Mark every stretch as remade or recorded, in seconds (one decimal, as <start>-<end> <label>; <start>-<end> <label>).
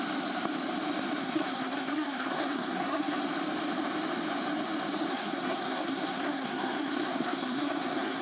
0.0-1.2 recorded; 1.2-3.2 remade; 3.2-5.1 recorded; 5.1-8.2 remade